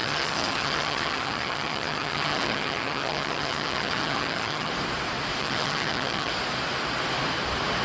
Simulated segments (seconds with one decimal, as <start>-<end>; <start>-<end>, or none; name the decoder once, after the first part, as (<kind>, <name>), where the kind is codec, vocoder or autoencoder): 0.0-4.7 (vocoder, HiFi-GAN); 5.4-6.3

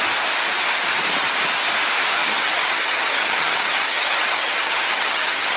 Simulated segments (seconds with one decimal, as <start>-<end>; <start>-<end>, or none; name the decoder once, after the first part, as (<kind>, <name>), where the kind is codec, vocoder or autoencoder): 2.2-5.6 (vocoder, HiFi-GAN)

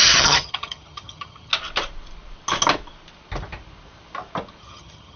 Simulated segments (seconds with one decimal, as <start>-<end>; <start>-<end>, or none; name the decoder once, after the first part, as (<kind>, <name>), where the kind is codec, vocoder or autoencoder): 0.0-1.5 (vocoder, HiFi-GAN); 4.6-5.2

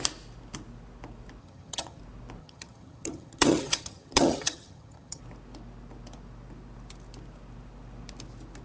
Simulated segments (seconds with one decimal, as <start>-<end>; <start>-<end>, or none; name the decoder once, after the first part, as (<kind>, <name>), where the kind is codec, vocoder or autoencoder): 1.4-2.0 (vocoder, HiFi-GAN); 2.4-5.2

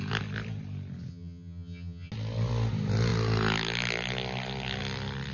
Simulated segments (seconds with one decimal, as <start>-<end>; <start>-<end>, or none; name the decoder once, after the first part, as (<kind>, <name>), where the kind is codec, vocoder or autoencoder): 1.1-2.1 (vocoder, HiFi-GAN)

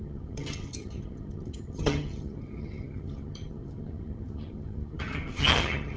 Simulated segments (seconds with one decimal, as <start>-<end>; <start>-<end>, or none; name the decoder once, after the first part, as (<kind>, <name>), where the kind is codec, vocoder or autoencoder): 0.0-6.0 (vocoder, HiFi-GAN)

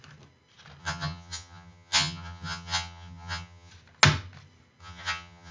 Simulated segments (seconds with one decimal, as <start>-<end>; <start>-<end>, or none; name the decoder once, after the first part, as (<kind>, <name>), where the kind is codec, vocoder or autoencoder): 0.8-3.7 (vocoder, HiFi-GAN); 4.8-5.5